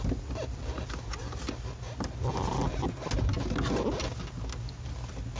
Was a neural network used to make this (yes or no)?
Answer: no